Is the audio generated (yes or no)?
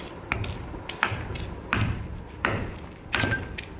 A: no